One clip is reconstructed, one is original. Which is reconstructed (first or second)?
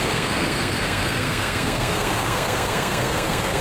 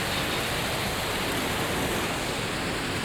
first